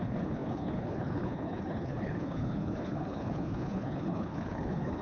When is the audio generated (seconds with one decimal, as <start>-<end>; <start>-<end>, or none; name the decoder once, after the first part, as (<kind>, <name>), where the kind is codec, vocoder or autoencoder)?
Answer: 0.0-5.0 (codec, HILCodec)